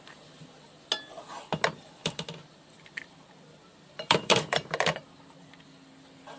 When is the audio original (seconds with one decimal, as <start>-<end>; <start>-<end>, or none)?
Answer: 0.0-2.0; 2.8-3.7; 5.0-6.4